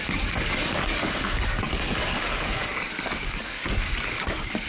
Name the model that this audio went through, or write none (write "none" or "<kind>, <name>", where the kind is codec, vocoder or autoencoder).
codec, DAC